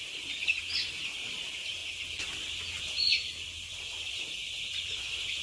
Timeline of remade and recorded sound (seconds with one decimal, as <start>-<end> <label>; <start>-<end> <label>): 0.0-4.4 recorded; 4.4-5.0 remade; 5.0-5.4 recorded